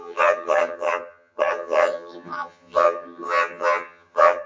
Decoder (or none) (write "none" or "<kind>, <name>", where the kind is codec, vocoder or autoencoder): vocoder, HiFi-GAN